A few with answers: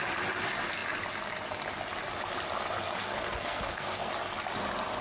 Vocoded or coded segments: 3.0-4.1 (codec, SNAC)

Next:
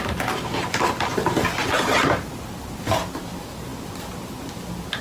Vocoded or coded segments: none

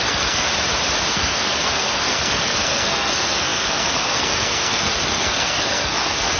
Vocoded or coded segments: 0.0-0.5 (codec, SNAC); 1.1-6.4